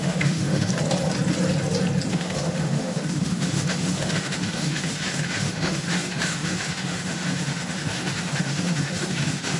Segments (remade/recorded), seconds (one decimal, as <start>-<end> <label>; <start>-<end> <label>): 0.0-0.7 remade; 0.7-2.1 recorded; 2.1-9.6 remade

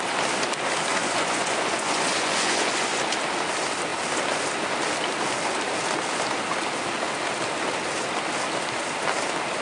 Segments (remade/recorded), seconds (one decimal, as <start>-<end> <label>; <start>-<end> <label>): 0.0-0.9 recorded; 0.9-3.0 remade; 3.0-9.6 recorded

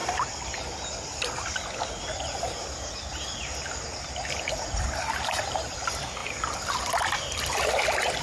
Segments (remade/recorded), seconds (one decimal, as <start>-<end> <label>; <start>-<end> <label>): 0.0-8.2 recorded

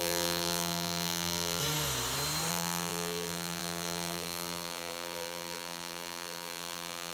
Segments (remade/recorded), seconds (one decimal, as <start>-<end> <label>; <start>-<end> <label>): 0.0-1.6 remade; 1.6-2.5 recorded; 2.5-7.1 remade

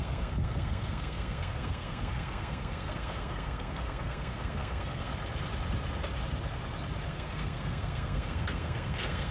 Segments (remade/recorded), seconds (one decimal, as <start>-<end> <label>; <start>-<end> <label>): 0.0-5.1 remade; 5.1-7.1 recorded; 7.1-9.3 remade

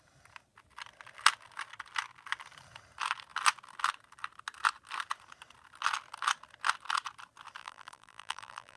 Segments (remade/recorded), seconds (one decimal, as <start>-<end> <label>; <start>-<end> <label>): 0.0-7.6 recorded; 7.6-8.8 remade